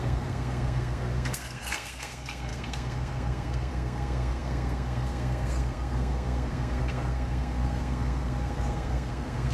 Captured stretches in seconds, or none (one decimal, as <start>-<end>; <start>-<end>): none